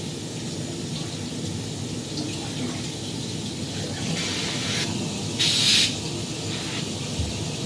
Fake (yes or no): no